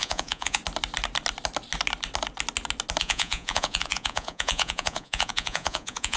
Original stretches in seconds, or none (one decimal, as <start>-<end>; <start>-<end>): 0.6-3.0